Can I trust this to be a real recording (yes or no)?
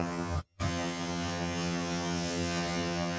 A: no